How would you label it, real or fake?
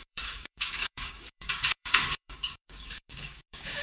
fake